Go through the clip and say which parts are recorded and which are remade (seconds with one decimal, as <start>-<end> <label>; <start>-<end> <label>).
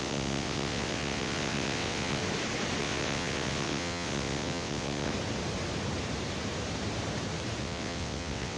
0.0-2.2 remade; 2.2-2.8 recorded; 2.8-5.1 remade; 5.1-7.6 recorded; 7.6-8.6 remade